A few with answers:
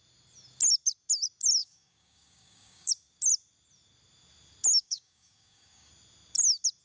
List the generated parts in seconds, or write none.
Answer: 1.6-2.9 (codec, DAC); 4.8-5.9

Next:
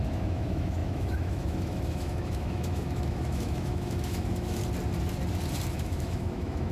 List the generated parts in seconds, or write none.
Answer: 0.0-4.6 (autoencoder, DAC-VAE); 5.7-6.7